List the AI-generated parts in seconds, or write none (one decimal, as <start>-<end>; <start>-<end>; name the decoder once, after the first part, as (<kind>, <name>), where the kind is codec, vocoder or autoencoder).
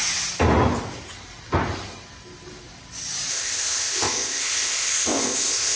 3.3-5.8 (codec, ZipCodec)